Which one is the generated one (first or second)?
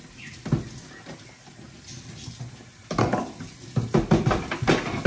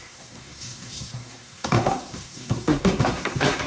second